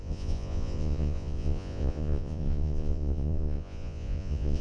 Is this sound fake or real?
fake